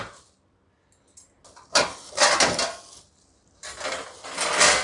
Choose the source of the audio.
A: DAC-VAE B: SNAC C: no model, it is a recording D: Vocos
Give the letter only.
C